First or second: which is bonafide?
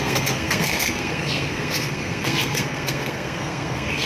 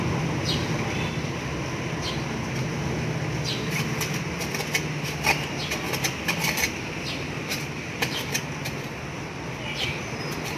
second